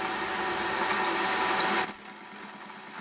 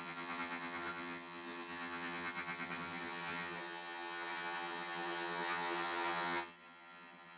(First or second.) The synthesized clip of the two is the second